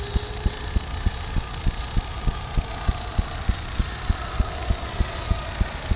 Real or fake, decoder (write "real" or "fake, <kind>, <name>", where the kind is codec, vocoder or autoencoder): real